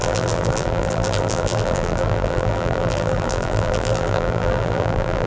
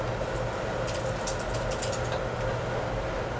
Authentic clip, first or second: second